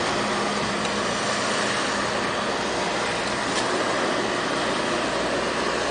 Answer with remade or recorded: recorded